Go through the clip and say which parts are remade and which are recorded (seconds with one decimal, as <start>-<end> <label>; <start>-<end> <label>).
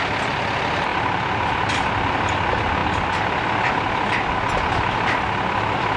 0.0-6.0 recorded